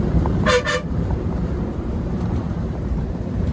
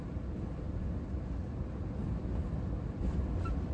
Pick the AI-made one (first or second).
first